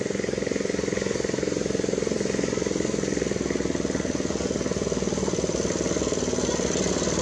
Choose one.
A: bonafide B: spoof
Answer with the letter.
A